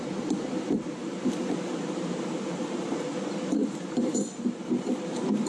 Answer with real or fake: fake